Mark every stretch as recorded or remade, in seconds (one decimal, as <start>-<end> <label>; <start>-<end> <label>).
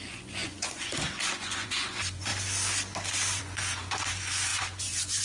0.0-2.3 remade; 2.3-3.4 recorded; 3.4-5.2 remade